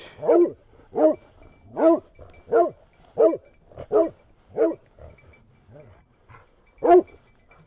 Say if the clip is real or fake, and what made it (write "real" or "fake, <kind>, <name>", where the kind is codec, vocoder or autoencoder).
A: real